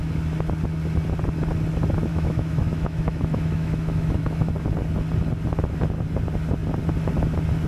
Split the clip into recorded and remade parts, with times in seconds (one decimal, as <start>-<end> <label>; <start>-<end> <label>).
0.0-2.1 recorded; 2.1-4.5 remade; 4.5-7.7 recorded